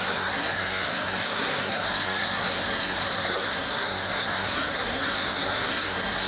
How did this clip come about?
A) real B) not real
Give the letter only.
B